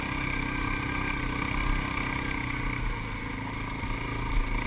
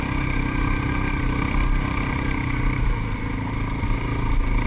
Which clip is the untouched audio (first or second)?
first